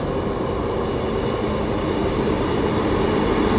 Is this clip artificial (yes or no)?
no